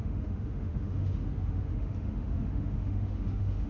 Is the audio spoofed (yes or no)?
yes